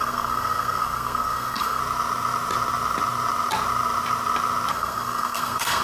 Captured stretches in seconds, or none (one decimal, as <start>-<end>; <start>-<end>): 1.8-4.7